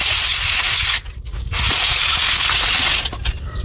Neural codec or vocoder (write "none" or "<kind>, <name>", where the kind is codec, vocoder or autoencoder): none